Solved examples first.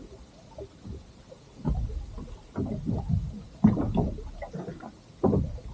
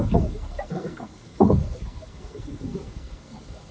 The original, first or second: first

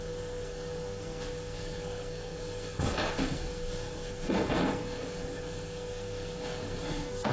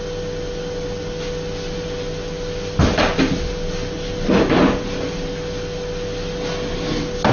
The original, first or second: second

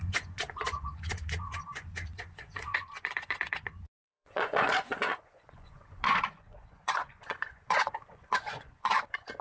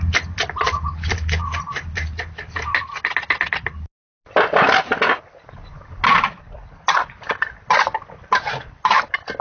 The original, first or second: second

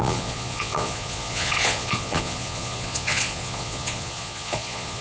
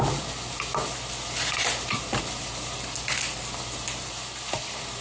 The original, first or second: second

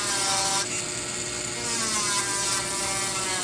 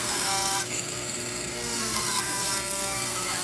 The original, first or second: first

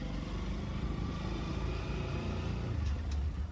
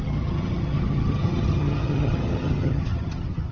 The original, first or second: first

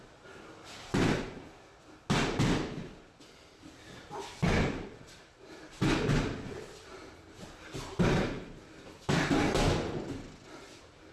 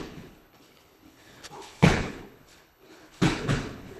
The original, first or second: first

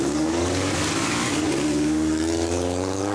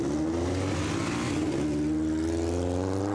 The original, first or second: second